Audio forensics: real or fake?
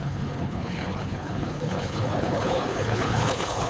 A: fake